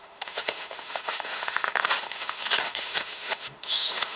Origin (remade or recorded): remade